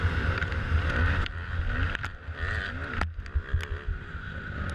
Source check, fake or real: real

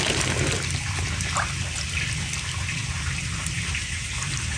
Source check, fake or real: real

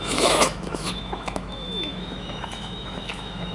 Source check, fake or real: fake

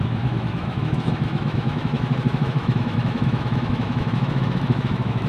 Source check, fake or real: fake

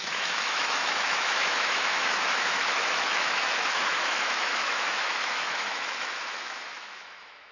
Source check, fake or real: fake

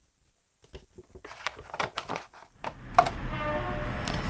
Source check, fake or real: real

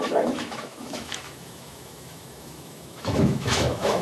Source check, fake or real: fake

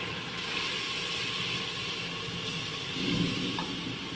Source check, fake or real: real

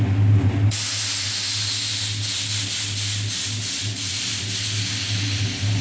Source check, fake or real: real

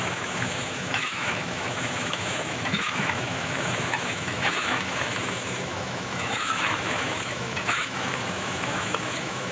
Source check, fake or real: fake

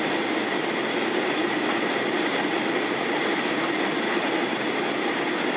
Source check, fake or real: real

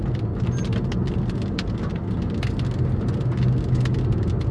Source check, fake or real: real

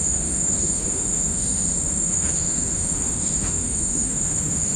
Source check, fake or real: fake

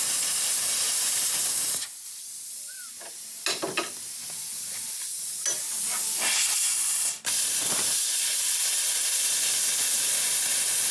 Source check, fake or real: real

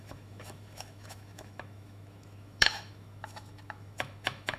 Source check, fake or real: fake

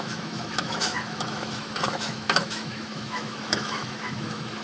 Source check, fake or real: fake